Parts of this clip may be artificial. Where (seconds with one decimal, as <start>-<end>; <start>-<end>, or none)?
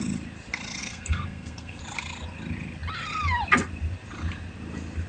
0.8-1.8